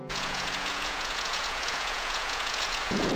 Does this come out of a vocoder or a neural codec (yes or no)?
yes